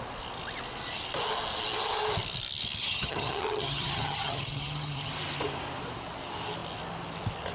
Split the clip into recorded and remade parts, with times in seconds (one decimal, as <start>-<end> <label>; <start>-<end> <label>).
0.0-2.8 recorded; 2.8-5.1 remade; 5.1-7.5 recorded